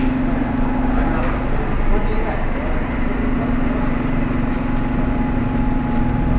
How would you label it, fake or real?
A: real